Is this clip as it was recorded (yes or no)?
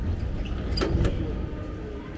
yes